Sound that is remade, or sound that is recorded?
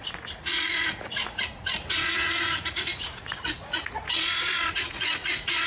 remade